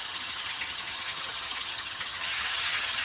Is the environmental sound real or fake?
fake